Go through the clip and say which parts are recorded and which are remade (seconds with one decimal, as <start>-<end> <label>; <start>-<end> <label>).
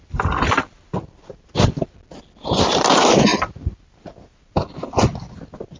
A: 0.0-5.8 recorded